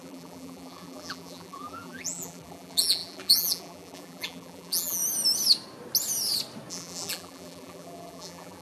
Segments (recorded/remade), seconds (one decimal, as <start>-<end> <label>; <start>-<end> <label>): 0.0-5.0 remade; 5.0-6.7 recorded; 6.7-8.6 remade